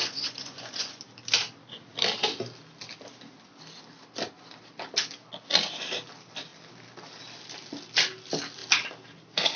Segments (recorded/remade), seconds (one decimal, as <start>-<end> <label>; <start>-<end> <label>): 0.0-1.0 remade; 1.0-9.6 recorded